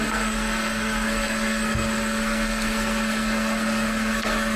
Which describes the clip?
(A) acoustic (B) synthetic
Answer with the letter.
B